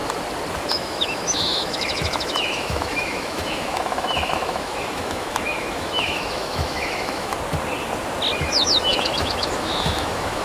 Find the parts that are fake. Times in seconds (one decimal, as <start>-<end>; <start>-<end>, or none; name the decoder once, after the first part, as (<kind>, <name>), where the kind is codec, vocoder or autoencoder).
0.7-7.3 (autoencoder, DAC-VAE); 8.4-10.4